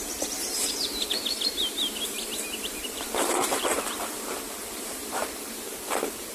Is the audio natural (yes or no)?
no